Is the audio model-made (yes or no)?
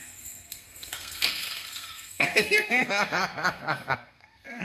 yes